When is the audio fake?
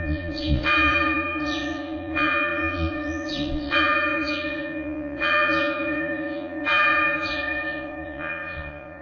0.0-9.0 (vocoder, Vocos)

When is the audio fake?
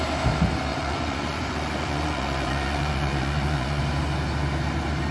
0.7-3.8 (vocoder, Vocos)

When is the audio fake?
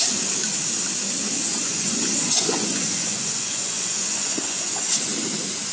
1.5-4.9 (vocoder, Vocos)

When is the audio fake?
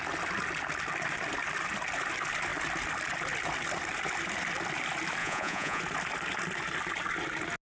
5.2-5.8 (vocoder, Vocos)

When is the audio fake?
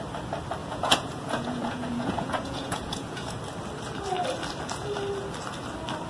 0.6-3.4 (vocoder, Vocos)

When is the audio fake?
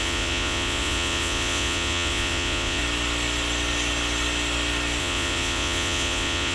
0.0-2.8 (vocoder, Vocos); 5.0-6.5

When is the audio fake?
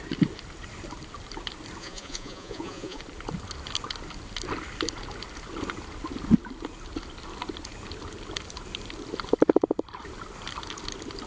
1.8-3.0 (vocoder, Vocos)